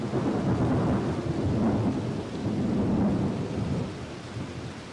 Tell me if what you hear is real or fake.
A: real